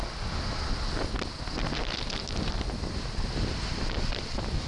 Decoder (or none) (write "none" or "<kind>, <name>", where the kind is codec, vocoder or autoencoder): none